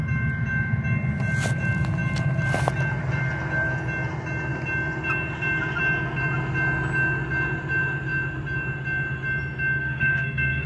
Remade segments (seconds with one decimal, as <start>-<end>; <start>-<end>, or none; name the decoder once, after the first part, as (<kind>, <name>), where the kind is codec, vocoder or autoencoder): 9.8-10.7 (codec, SNAC)